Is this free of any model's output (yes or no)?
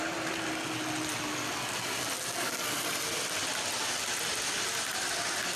yes